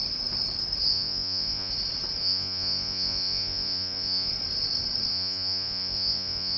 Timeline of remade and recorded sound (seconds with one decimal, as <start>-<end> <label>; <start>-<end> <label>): 0.0-0.9 recorded; 0.9-1.7 remade; 1.7-2.2 recorded; 2.2-4.3 remade; 4.3-5.1 recorded; 5.1-6.6 remade